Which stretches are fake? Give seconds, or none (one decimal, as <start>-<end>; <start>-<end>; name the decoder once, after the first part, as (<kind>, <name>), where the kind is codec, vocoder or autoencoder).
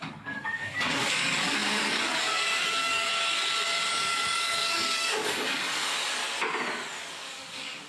0.0-3.1 (codec, DAC); 3.9-6.2; 7.1-7.9